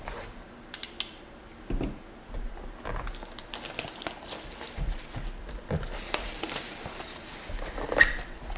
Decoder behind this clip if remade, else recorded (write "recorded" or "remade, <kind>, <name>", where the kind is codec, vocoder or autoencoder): recorded